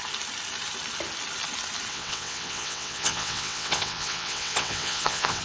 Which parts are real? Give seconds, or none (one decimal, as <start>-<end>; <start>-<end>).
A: 0.0-1.9